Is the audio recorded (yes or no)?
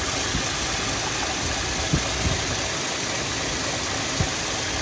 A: yes